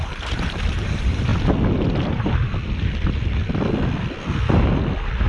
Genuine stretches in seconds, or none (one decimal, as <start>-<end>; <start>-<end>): 1.3-2.1; 2.5-5.3